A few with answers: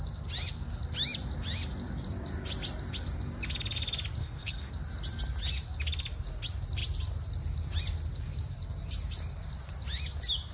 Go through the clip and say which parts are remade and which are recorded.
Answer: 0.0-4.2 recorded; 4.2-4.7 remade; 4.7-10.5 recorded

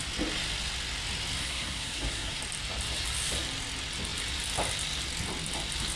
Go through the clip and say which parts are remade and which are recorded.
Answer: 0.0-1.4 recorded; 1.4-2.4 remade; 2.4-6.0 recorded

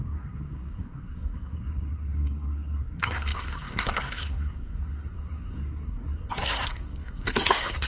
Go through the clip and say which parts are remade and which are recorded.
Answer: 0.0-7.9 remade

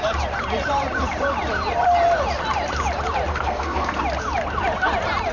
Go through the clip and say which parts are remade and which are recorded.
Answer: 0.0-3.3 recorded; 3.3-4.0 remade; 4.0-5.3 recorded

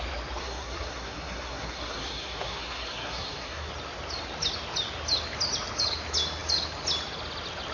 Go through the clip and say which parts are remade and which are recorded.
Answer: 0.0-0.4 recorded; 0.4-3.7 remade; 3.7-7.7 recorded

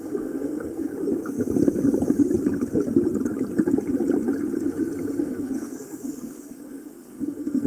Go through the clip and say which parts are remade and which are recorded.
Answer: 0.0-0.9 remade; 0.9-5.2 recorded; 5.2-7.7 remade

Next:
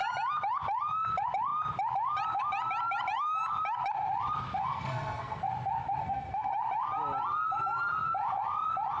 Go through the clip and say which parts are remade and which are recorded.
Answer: 0.0-4.6 recorded; 4.6-5.4 remade; 5.4-6.0 recorded; 6.0-6.5 remade; 6.5-9.0 recorded